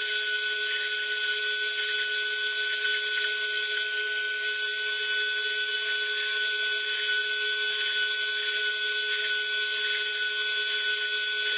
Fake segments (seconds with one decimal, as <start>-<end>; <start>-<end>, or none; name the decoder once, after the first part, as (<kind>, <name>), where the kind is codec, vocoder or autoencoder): none